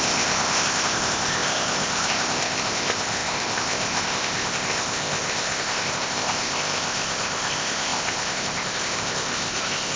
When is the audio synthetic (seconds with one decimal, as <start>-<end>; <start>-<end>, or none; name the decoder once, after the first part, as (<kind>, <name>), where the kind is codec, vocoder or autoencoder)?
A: 0.0-10.0 (codec, ZipCodec)